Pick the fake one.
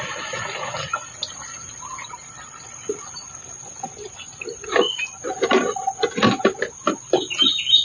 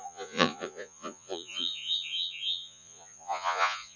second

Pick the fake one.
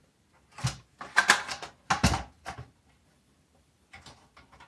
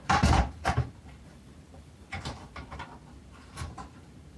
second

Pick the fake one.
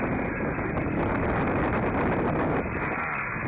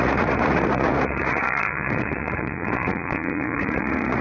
second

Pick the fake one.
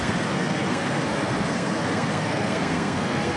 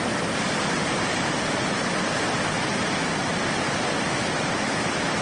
first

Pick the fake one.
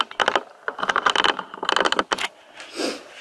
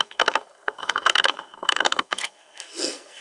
second